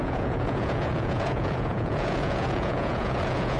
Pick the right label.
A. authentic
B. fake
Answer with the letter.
B